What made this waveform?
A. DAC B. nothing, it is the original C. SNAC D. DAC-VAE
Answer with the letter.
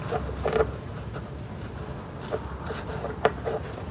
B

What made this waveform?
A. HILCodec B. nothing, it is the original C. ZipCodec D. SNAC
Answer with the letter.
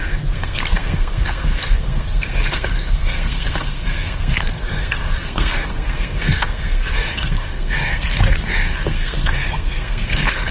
D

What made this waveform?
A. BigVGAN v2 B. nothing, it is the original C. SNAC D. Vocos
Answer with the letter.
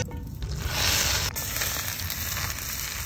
B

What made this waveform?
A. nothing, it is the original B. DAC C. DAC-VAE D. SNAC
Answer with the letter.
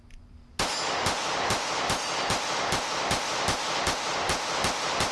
A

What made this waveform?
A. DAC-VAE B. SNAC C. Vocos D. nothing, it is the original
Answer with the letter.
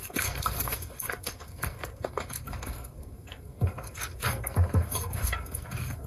B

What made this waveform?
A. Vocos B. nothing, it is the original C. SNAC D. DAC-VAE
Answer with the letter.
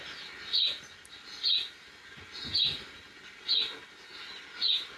B